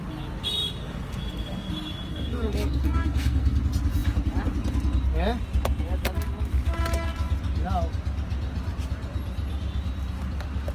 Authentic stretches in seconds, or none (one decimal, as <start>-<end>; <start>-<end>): 0.0-0.8; 1.7-2.1; 3.6-10.7